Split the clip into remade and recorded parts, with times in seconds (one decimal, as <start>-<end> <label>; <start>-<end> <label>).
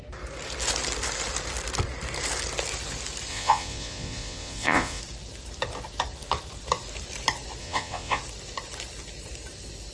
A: 0.0-3.3 recorded; 3.3-5.0 remade; 5.0-7.6 recorded; 7.6-8.2 remade; 8.2-9.9 recorded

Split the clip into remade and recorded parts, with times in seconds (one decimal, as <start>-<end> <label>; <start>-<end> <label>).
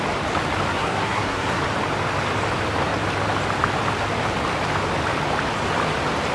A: 0.0-0.7 recorded; 0.7-1.6 remade; 1.6-6.3 recorded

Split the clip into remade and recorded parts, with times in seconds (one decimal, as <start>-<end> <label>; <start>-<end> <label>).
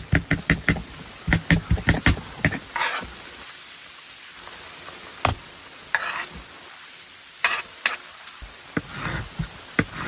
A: 0.0-10.1 recorded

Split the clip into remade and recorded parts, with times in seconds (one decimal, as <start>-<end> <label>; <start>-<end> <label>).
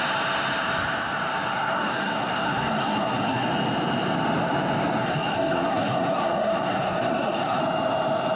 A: 0.0-1.5 recorded; 1.5-3.5 remade; 3.5-5.0 recorded; 5.0-7.6 remade; 7.6-8.4 recorded